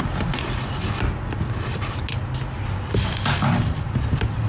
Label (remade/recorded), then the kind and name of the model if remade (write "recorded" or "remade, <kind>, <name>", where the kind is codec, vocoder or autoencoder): recorded